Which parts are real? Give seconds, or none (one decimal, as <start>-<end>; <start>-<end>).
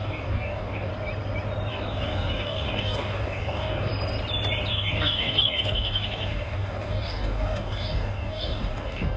0.9-1.7; 3.9-4.7